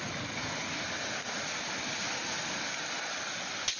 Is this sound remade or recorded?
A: recorded